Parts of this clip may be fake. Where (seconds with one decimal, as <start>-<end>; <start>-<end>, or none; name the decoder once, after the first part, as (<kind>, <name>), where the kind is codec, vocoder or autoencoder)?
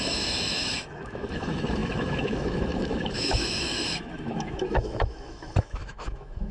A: 0.0-6.5 (autoencoder, DAC-VAE)